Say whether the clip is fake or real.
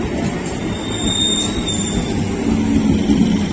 real